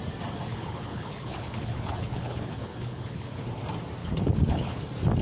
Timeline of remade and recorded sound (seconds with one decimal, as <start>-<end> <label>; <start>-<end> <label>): 0.0-0.5 recorded; 0.5-3.6 remade; 3.6-4.0 recorded; 4.0-4.8 remade; 4.8-5.2 recorded